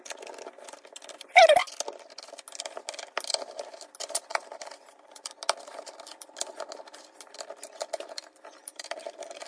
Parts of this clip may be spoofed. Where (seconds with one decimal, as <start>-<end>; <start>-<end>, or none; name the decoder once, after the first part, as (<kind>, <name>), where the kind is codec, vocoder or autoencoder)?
4.3-5.4 (vocoder, BigVGAN v2); 8.6-9.5